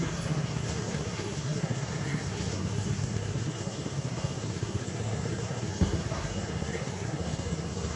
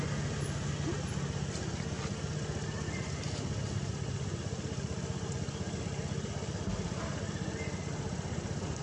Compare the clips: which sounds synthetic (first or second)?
first